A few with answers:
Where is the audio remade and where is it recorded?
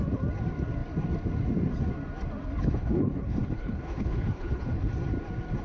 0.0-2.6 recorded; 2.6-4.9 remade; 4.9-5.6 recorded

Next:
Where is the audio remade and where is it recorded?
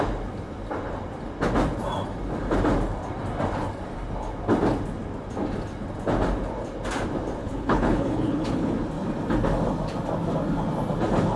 0.0-7.4 recorded; 7.4-8.7 remade; 8.7-11.4 recorded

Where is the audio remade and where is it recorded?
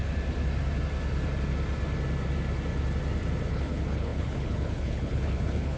0.0-3.5 recorded; 3.5-5.8 remade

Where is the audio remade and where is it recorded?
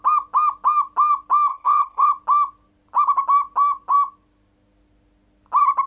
0.0-1.5 recorded; 1.5-2.1 remade; 2.1-5.9 recorded